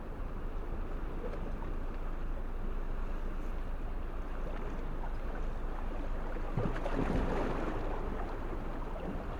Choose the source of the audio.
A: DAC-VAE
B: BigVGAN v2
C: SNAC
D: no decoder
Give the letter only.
D